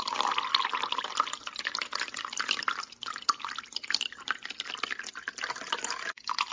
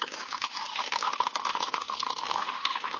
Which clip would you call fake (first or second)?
second